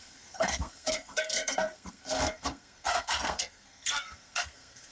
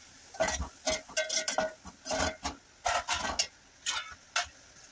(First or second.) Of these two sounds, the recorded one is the second